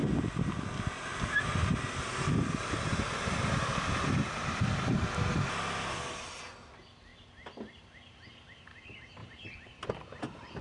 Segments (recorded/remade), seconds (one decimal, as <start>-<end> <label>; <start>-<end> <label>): 0.0-9.2 recorded; 9.2-9.9 remade; 9.9-10.6 recorded